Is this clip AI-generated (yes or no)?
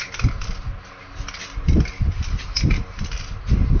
no